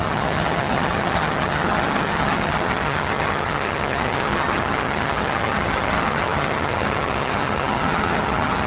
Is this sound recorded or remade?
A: remade